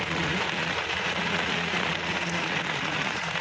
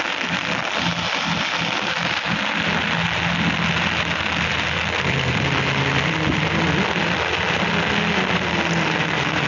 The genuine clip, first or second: second